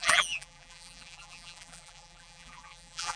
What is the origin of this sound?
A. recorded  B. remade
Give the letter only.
B